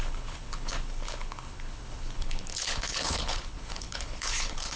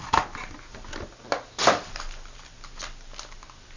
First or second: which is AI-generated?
first